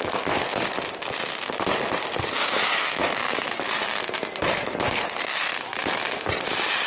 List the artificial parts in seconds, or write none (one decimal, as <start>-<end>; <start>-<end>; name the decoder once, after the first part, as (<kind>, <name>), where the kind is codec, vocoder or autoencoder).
2.4-3.2 (autoencoder, DAC-VAE)